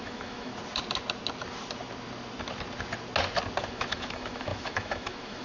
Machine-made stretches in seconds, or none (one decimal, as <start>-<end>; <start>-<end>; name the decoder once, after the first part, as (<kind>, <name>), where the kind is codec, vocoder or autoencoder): 0.0-0.5 (autoencoder, DAC-VAE); 3.7-5.4